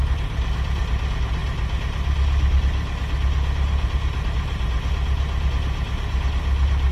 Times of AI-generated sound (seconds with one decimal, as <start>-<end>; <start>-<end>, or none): none